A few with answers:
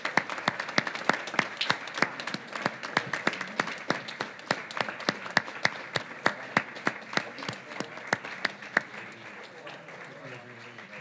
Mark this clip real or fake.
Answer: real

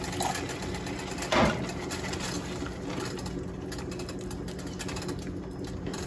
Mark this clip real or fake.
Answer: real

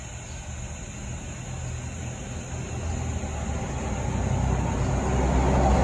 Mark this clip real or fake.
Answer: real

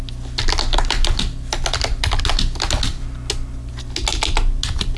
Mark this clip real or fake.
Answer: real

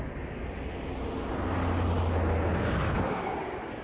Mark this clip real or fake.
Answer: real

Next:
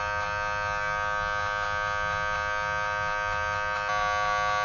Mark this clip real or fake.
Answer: real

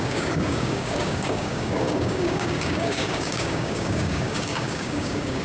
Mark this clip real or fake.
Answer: fake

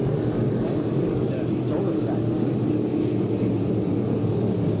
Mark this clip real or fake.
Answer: real